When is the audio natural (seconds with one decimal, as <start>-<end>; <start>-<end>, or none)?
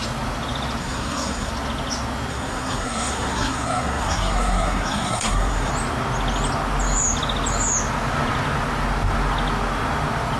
0.0-0.8; 1.5-2.3; 5.7-10.4